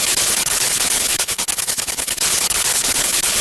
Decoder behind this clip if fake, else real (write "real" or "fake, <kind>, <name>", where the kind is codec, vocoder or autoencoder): fake, codec, HILCodec